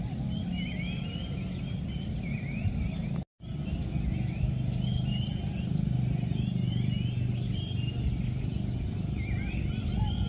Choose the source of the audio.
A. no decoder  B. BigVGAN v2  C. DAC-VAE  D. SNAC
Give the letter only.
A